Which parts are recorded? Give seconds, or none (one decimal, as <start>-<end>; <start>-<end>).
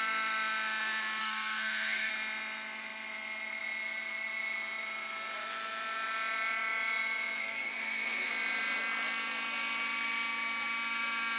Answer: 0.0-1.2; 2.1-7.4; 8.3-11.4